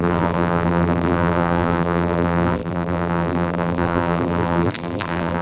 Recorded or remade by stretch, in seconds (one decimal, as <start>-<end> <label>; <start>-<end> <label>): 0.0-5.4 remade